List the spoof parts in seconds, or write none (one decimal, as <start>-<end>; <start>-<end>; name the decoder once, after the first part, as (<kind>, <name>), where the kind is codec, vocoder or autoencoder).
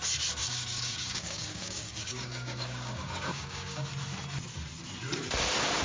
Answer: 0.4-3.9 (codec, DAC)